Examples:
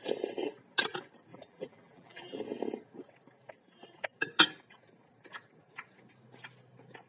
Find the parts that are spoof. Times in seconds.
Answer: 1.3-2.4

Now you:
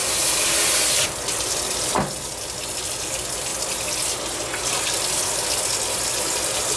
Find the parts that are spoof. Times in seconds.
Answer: none

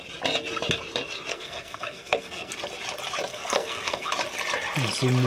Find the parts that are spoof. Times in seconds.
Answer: 1.3-2.5; 3.3-4.1

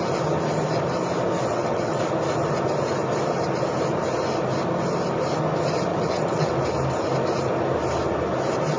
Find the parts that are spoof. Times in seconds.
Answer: 1.5-2.0; 5.9-6.5